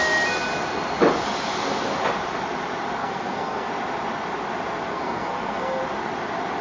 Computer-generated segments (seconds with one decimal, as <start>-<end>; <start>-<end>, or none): 3.0-3.7; 4.9-5.8